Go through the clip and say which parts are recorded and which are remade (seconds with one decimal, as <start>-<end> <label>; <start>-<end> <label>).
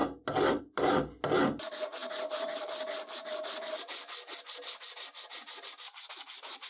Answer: 0.0-6.7 recorded